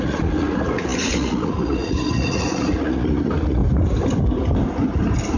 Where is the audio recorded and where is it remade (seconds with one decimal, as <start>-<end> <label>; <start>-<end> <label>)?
0.0-3.6 remade; 3.6-5.4 recorded